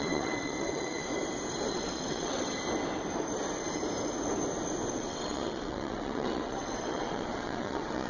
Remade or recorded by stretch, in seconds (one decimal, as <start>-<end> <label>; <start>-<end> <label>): 0.0-1.1 remade; 1.1-1.7 recorded; 1.7-2.5 remade; 2.5-4.9 recorded; 4.9-8.1 remade